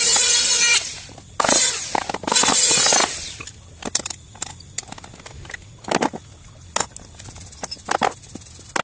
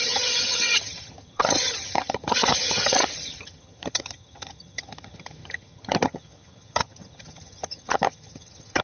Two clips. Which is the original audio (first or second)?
first